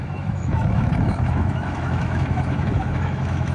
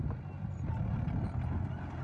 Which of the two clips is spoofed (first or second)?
first